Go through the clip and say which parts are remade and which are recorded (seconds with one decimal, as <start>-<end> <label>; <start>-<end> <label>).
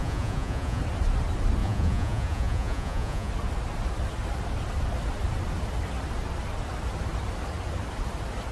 0.0-0.8 remade; 0.8-1.6 recorded; 1.6-3.3 remade; 3.3-8.5 recorded